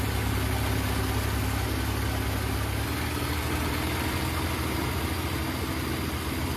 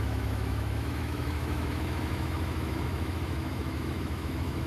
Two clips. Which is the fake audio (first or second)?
second